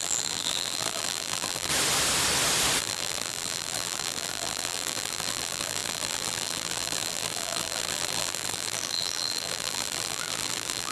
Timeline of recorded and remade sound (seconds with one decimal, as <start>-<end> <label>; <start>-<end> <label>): 0.0-1.7 remade; 1.7-2.8 recorded; 2.8-10.9 remade

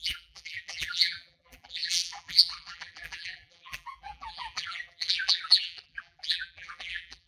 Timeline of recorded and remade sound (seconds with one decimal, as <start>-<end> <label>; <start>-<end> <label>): 0.0-7.3 remade